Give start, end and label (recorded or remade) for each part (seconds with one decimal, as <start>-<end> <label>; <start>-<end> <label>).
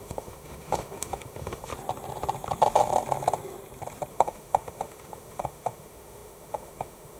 0.0-1.7 remade; 1.7-4.1 recorded; 4.1-7.2 remade